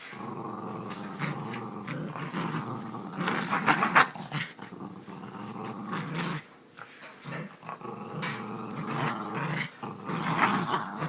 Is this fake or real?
real